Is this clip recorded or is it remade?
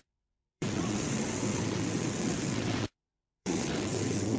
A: remade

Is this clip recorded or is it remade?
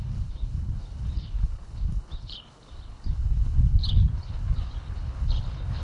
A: remade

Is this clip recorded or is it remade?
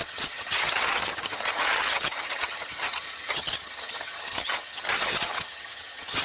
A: remade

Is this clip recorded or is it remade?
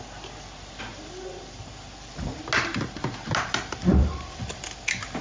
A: recorded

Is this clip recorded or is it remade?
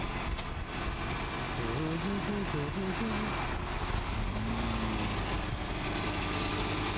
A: recorded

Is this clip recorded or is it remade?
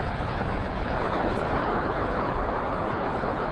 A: remade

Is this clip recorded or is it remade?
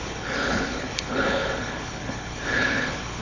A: remade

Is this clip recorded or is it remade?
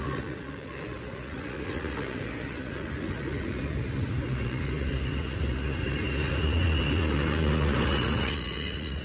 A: remade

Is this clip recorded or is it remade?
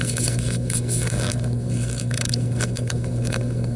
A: remade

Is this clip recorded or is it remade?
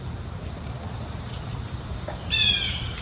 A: remade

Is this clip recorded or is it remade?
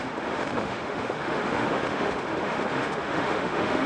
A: remade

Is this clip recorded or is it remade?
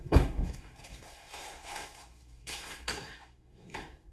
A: remade